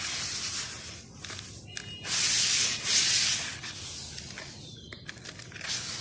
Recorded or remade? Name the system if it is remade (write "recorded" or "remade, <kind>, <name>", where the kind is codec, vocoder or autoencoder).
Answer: recorded